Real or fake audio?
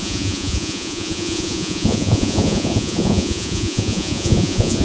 fake